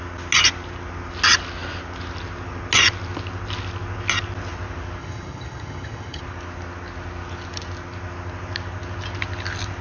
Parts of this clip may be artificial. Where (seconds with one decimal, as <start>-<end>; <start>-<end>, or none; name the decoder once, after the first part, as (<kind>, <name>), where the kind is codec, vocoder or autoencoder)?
5.0-6.2 (vocoder, HiFi-GAN)